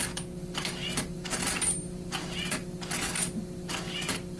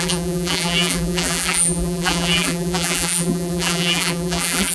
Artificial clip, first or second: second